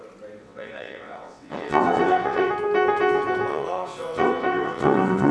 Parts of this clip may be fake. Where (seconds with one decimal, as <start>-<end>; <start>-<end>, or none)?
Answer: 0.4-2.5; 3.5-5.3